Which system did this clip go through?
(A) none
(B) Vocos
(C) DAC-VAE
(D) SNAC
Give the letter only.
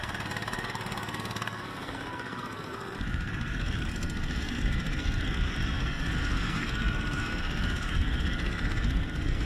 D